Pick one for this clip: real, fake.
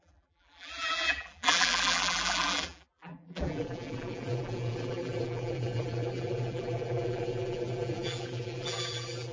fake